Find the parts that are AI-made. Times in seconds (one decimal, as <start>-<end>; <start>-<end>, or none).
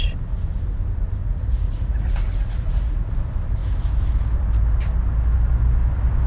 1.2-3.1